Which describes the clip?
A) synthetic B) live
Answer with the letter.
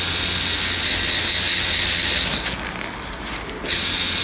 B